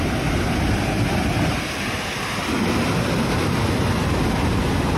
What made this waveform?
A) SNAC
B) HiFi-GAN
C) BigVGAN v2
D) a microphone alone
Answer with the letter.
D